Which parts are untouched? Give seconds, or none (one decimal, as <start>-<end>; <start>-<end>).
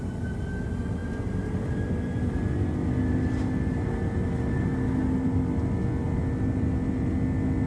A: 0.0-7.7